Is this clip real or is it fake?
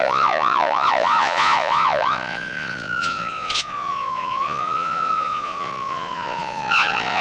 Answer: fake